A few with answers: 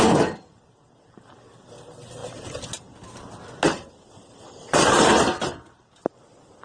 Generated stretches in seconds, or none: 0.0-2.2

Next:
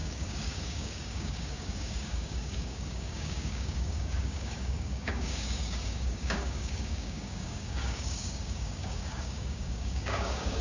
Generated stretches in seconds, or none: 0.0-10.6

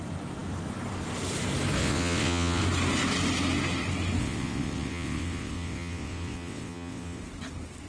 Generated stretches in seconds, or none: 1.8-2.6; 4.2-7.2

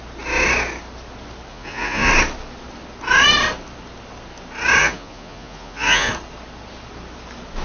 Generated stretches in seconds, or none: 1.5-2.1; 4.8-6.1

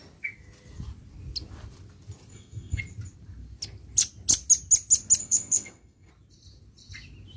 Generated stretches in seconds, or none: 2.3-2.8; 5.2-6.1